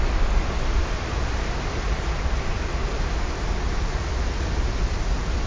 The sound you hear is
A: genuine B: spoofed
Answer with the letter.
A